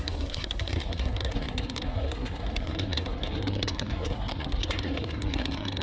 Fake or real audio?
fake